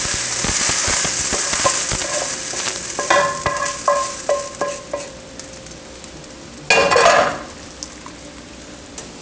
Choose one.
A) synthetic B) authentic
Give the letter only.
B